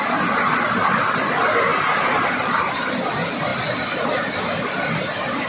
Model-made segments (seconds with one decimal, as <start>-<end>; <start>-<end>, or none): none